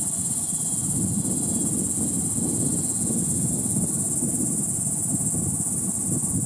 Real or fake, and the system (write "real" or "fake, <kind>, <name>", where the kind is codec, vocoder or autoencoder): real